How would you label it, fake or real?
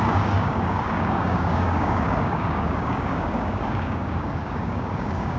fake